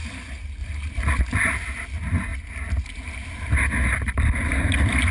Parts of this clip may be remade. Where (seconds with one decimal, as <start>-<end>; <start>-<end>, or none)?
none